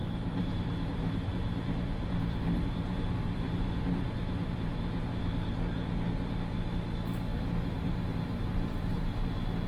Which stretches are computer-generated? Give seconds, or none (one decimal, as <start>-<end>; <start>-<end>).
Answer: 0.0-5.2; 7.3-9.0